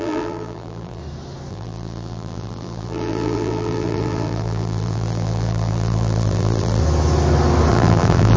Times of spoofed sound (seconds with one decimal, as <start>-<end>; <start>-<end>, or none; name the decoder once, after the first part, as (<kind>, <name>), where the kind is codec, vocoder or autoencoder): 0.0-1.0 (vocoder, BigVGAN v2); 1.5-6.8; 7.7-8.4